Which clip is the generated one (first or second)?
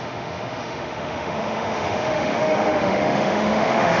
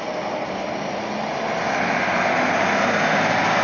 first